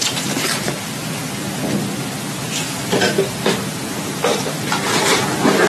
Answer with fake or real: real